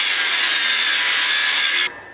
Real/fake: real